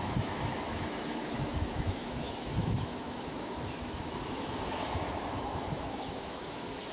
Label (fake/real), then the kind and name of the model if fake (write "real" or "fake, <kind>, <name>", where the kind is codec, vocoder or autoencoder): fake, autoencoder, DAC-VAE